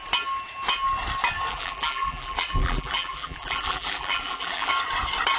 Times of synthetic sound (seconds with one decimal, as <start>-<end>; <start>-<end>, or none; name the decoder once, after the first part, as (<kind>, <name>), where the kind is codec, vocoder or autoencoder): 1.5-4.7 (vocoder, BigVGAN v2)